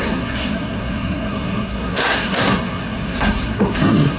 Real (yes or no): no